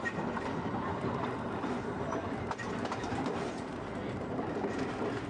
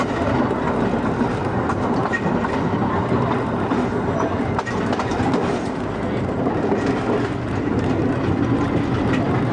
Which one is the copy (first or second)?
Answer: first